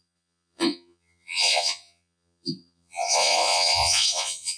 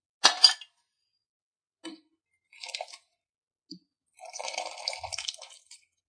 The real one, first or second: second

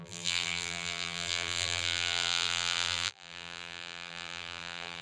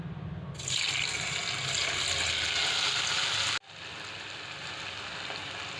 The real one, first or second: second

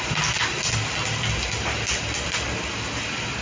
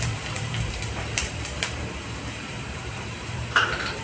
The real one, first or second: first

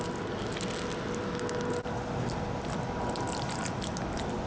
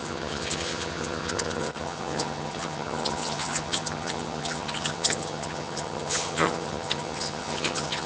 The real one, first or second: first